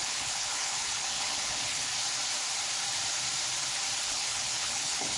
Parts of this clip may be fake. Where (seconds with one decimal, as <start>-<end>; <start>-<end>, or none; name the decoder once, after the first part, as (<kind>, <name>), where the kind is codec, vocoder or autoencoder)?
0.0-1.9 (codec, HILCodec); 4.0-5.2